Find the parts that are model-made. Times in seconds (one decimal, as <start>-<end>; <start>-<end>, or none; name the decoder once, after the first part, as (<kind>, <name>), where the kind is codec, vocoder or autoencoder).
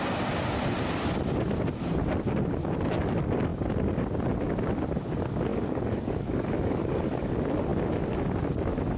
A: 5.5-7.3 (codec, DAC)